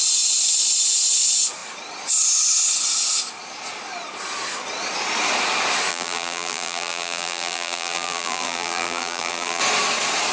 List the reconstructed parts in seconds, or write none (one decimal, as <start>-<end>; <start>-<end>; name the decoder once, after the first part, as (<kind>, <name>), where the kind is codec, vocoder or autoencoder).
5.9-9.6 (vocoder, BigVGAN v2)